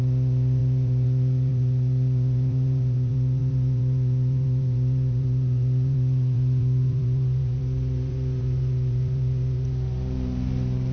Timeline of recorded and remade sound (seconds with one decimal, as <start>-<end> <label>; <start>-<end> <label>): 0.0-10.9 remade